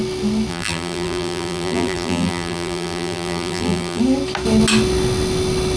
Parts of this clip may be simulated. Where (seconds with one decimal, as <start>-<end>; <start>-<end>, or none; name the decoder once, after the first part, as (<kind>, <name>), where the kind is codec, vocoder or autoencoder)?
0.5-4.0 (vocoder, BigVGAN v2)